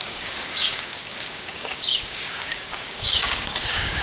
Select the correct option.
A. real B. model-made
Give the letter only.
B